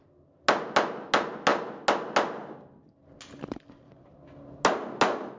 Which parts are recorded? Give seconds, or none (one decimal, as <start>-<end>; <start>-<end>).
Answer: 0.0-5.4